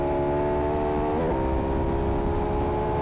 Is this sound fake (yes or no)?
no